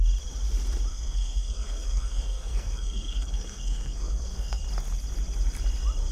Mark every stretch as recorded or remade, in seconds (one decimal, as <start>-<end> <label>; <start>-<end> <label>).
0.0-0.9 recorded; 0.9-4.6 remade; 4.6-6.1 recorded